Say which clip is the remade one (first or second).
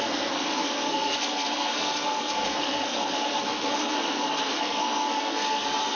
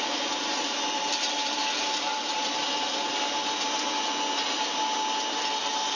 first